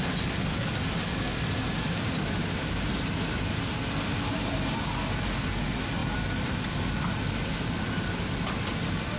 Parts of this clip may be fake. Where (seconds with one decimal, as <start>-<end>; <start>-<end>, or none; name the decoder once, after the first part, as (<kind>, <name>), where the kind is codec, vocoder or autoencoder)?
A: none